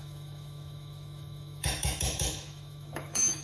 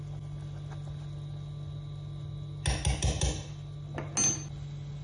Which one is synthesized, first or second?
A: first